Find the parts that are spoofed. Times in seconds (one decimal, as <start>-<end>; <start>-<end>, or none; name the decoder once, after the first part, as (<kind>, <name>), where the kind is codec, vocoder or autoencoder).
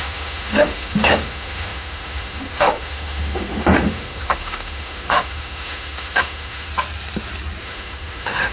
0.0-6.7 (autoencoder, DAC-VAE); 7.6-8.5